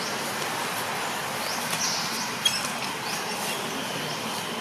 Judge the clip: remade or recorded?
recorded